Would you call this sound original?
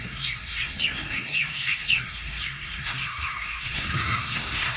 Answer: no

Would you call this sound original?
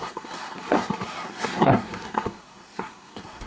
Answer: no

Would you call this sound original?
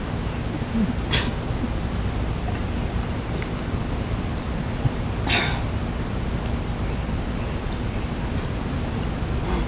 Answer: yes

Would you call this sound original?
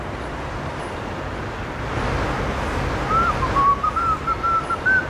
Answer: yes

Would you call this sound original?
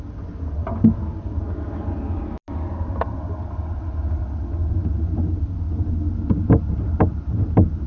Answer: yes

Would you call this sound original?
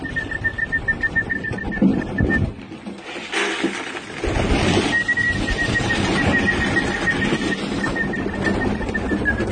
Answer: yes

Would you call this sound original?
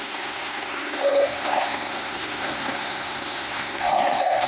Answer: no